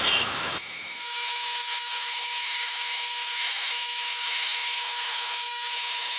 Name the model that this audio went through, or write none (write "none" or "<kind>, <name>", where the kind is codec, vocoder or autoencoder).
autoencoder, DAC-VAE